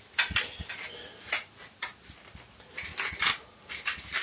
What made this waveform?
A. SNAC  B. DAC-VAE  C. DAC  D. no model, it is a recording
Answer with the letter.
D